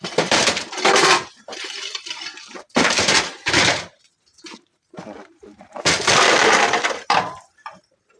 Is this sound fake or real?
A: fake